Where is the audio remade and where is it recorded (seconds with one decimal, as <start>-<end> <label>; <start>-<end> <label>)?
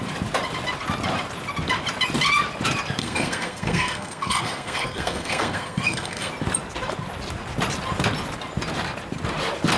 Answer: 0.0-3.0 recorded; 3.0-6.3 remade; 6.3-9.8 recorded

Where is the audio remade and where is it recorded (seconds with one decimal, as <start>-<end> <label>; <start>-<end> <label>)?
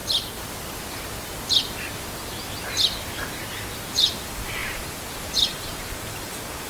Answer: 0.0-3.9 recorded; 3.9-6.7 remade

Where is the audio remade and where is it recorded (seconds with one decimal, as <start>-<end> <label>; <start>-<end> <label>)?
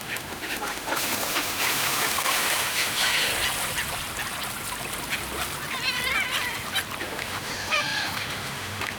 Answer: 0.0-3.3 remade; 3.3-7.0 recorded; 7.0-9.0 remade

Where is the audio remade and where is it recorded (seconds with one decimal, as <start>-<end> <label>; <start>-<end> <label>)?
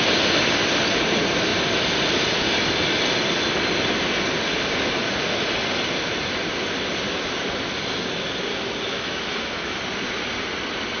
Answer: 0.0-8.5 recorded; 8.5-9.8 remade; 9.8-11.0 recorded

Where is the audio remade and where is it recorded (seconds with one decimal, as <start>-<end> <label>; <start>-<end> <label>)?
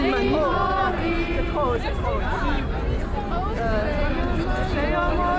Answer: 0.0-5.4 recorded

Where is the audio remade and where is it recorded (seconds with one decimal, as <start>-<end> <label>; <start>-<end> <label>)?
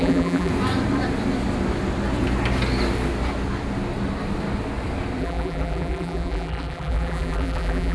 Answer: 0.0-0.5 remade; 0.5-5.2 recorded; 5.2-7.9 remade